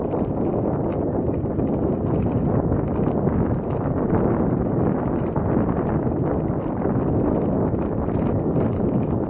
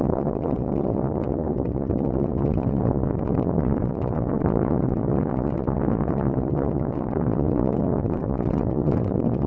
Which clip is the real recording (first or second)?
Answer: first